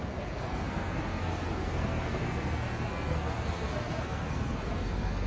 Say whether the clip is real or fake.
fake